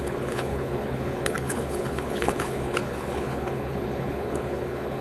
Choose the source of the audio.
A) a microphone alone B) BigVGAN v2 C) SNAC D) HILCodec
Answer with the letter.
D